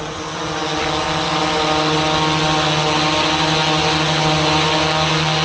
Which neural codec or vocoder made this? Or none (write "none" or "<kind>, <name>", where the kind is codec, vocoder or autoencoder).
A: none